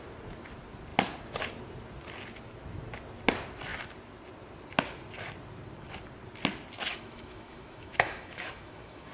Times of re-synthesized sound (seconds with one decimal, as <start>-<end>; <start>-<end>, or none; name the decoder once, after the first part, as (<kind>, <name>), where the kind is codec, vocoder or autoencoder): 6.9-9.1 (autoencoder, DAC-VAE)